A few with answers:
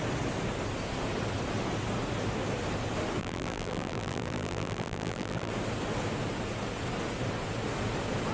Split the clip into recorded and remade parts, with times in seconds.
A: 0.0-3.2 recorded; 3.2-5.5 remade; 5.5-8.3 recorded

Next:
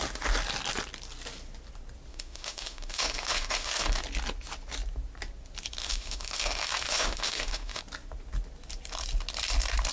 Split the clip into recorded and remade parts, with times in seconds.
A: 0.0-2.1 recorded; 2.1-4.0 remade; 4.0-5.8 recorded; 5.8-7.8 remade; 7.8-9.9 recorded